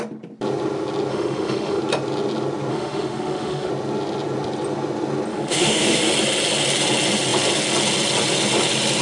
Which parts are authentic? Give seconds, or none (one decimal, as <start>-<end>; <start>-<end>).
0.0-1.1; 1.8-2.7; 3.7-5.3; 6.0-9.0